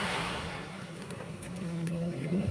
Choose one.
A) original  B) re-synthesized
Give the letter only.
B